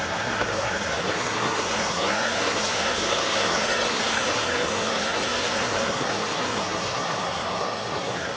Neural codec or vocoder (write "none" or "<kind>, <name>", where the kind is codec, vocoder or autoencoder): codec, SNAC